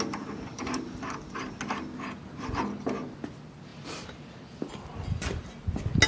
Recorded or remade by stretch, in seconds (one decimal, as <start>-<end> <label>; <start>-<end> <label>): 0.0-0.5 recorded; 0.5-1.1 remade; 1.1-6.1 recorded